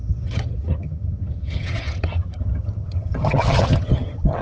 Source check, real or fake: fake